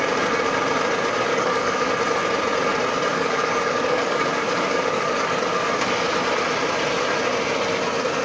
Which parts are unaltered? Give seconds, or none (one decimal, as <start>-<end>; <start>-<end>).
0.0-1.3; 1.9-3.1; 5.4-8.2